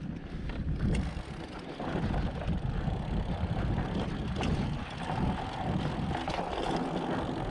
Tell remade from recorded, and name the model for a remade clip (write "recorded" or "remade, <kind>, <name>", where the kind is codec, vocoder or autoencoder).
recorded